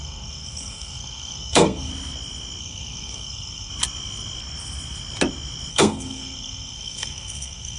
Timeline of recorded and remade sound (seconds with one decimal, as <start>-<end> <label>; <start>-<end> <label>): 0.0-1.9 remade; 1.9-2.6 recorded; 2.6-3.7 remade; 3.7-5.7 recorded; 5.7-7.8 remade